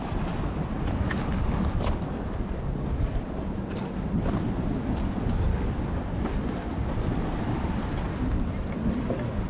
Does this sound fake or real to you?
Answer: real